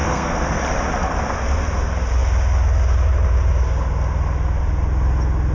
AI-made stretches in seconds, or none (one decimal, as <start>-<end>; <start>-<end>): 0.0-0.6